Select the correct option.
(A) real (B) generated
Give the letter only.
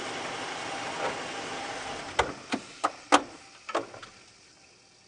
A